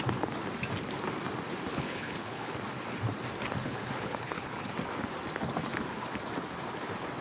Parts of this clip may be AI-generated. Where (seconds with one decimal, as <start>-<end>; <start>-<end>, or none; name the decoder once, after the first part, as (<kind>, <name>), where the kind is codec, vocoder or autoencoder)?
1.7-2.5 (codec, HILCodec); 3.6-4.7